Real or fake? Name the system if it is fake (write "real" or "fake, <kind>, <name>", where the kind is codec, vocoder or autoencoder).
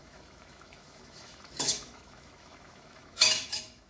fake, autoencoder, DAC-VAE